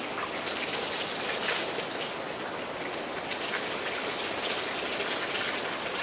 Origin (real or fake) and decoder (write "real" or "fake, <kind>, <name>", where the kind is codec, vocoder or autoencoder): real